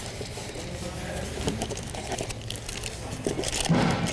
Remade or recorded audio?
recorded